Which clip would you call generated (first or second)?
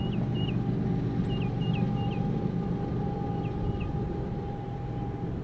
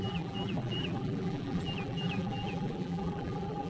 second